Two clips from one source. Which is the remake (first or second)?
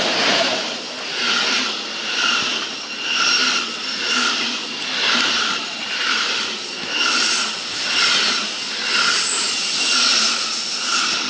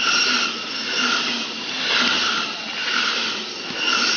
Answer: first